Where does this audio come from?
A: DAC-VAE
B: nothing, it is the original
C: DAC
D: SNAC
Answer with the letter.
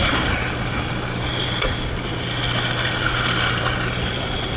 B